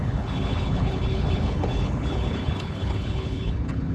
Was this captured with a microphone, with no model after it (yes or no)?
no